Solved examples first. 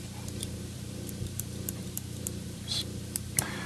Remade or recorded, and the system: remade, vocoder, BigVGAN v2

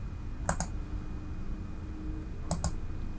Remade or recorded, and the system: recorded